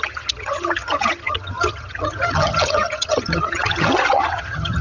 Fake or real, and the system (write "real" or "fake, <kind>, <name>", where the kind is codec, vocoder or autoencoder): fake, vocoder, HiFi-GAN